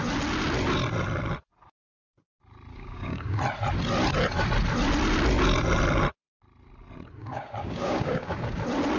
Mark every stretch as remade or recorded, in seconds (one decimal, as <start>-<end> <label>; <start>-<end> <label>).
0.0-2.7 recorded; 2.7-3.4 remade; 3.4-7.2 recorded; 7.2-8.6 remade; 8.6-9.0 recorded